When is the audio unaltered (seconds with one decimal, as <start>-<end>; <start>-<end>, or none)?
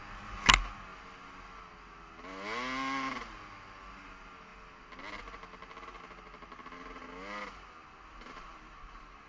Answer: 0.0-9.3